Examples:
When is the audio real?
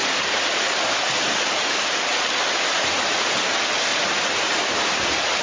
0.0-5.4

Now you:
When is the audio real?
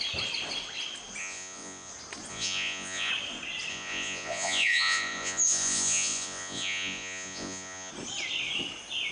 0.0-1.2; 1.9-2.3; 3.1-3.7; 7.9-9.1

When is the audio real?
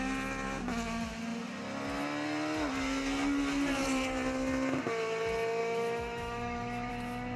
0.0-5.6; 6.9-7.4